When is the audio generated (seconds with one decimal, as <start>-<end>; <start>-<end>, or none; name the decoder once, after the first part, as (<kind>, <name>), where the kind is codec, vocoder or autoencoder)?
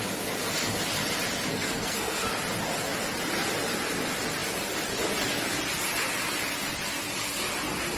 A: 1.5-2.3 (codec, SNAC)